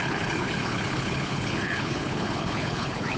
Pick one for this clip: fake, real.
fake